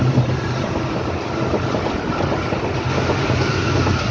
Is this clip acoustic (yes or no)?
yes